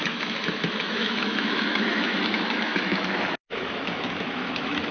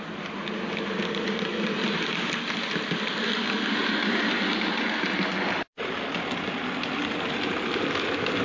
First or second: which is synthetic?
first